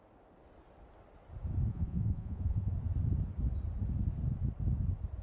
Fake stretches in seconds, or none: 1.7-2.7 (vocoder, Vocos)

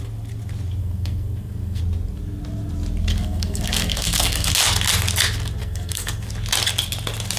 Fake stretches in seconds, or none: 0.8-1.8 (codec, SNAC); 3.1-4.5; 5.6-6.3

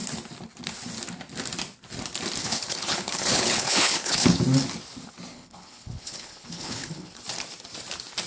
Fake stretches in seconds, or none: 2.4-4.4 (codec, HILCodec); 5.3-7.2

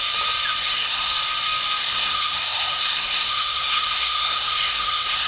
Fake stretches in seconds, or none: 0.6-1.1 (codec, SNAC); 1.8-5.3

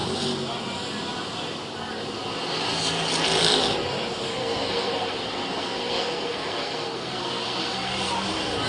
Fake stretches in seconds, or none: 4.3-8.1 (codec, SNAC)